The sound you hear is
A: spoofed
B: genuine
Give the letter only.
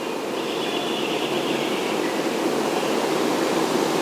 B